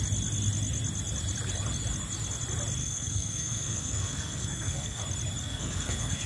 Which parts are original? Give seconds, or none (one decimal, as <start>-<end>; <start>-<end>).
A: 0.0-2.8; 5.0-5.4